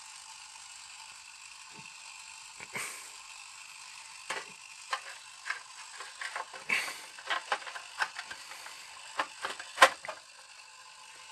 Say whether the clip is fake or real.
real